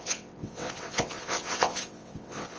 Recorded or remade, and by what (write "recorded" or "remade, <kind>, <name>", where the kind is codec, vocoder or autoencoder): remade, vocoder, WaveNeXt